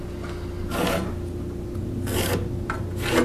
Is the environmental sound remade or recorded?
recorded